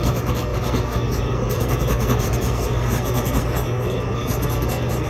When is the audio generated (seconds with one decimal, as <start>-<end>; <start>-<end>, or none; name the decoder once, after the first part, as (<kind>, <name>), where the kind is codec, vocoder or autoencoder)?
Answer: 0.0-5.1 (codec, SNAC)